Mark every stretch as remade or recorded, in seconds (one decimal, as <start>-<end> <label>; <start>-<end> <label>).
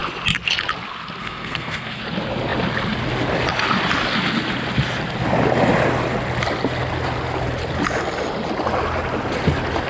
0.0-1.2 recorded; 1.2-2.0 remade; 2.0-9.9 recorded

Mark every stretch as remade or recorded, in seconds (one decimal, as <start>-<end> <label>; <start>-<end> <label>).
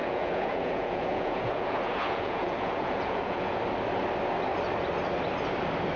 0.0-3.6 remade; 3.6-6.0 recorded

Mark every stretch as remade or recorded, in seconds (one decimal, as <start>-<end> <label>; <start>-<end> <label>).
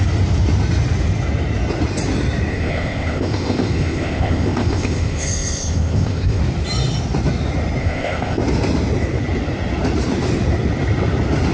0.0-2.5 recorded; 2.5-6.4 remade; 6.4-7.8 recorded; 7.8-8.4 remade; 8.4-11.5 recorded